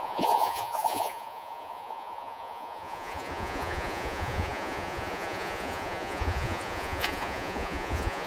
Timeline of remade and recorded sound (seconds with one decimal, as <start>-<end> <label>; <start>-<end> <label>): 0.0-8.3 remade